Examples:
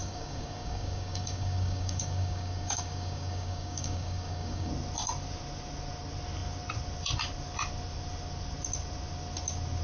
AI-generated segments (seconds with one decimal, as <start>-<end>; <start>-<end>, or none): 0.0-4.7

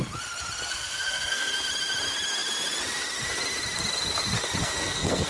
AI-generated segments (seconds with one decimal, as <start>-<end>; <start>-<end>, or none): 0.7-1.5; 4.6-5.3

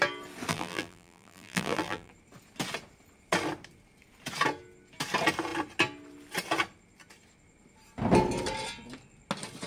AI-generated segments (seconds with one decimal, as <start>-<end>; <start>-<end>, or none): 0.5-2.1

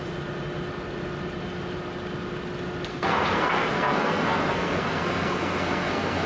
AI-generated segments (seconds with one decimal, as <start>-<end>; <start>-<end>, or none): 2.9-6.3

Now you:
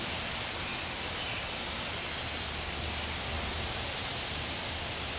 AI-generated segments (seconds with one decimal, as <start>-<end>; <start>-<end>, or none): none